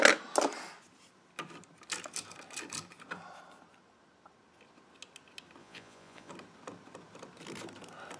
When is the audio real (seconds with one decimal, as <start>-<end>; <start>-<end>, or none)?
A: 0.0-5.6; 6.3-8.2